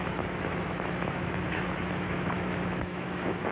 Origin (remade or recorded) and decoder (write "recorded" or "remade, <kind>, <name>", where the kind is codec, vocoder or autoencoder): remade, autoencoder, DAC-VAE